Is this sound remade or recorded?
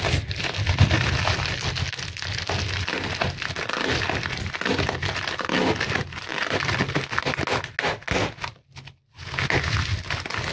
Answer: recorded